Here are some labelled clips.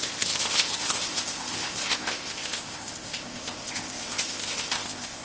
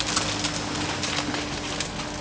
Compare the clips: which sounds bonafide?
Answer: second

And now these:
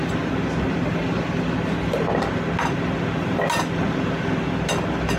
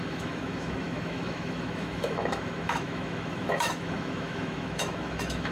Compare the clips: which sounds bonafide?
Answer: first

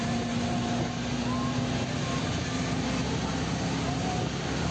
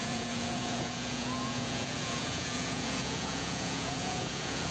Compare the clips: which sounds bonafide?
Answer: first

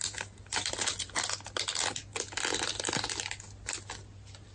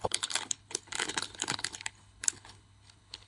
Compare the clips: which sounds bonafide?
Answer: first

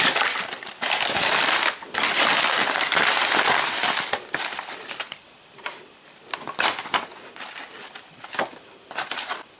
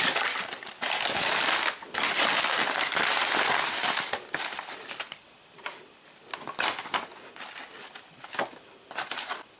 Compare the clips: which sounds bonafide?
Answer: second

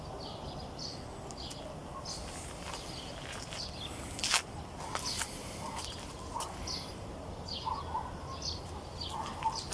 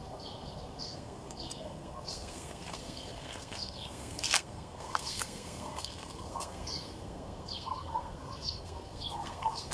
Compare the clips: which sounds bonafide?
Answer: first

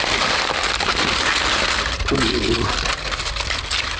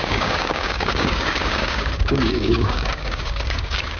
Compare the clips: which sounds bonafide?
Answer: first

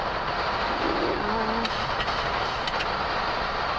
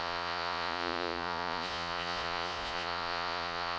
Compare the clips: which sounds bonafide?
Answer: first